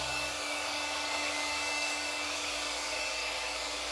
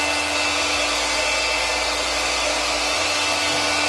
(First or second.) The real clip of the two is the second